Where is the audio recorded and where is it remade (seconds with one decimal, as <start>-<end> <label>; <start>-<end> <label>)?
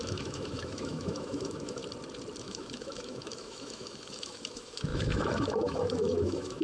0.0-1.8 remade; 1.8-2.4 recorded; 2.4-6.6 remade